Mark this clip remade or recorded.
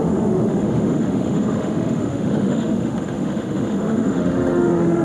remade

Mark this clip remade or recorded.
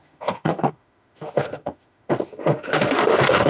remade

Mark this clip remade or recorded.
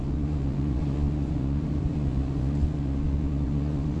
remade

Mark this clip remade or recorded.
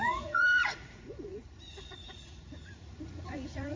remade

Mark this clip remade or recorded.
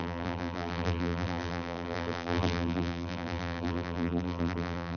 remade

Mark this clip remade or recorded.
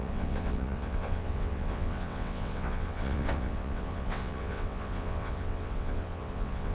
remade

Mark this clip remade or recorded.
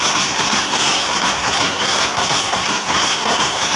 remade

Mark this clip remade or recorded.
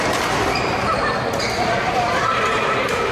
recorded